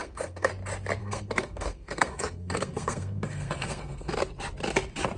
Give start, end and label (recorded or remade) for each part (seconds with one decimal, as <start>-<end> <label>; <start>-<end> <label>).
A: 0.0-0.5 remade; 0.5-1.0 recorded; 1.0-4.1 remade; 4.1-5.2 recorded